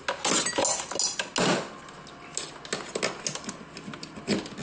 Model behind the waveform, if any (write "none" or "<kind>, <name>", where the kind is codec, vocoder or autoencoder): none